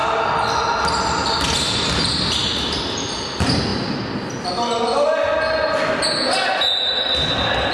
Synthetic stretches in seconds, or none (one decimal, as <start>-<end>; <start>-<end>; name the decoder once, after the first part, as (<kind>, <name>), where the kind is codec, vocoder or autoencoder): none